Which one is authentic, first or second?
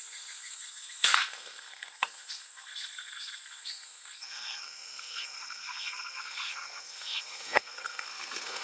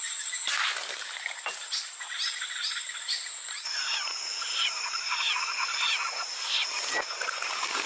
second